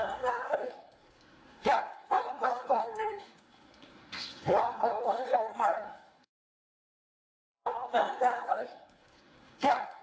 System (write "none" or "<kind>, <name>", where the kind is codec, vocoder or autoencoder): codec, SNAC